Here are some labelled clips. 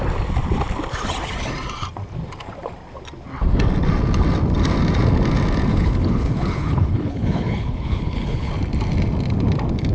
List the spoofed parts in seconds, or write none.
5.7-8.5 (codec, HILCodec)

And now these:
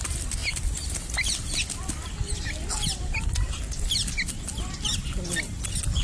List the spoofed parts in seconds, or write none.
none

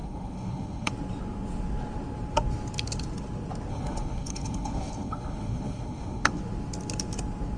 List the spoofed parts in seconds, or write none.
0.0-0.9 (codec, HILCodec); 3.7-6.3

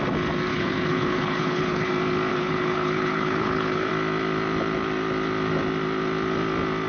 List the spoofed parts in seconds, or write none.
0.5-1.9 (codec, HILCodec); 2.3-3.9

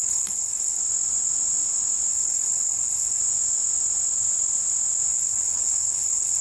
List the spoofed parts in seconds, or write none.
0.0-0.8 (codec, HILCodec); 2.1-3.2; 5.1-6.4

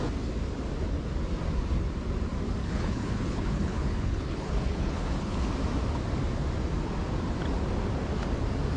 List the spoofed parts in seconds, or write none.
2.6-5.5 (codec, HILCodec)

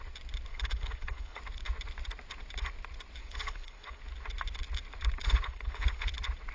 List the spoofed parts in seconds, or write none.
0.5-1.4 (codec, HILCodec); 3.2-4.0; 5.2-6.1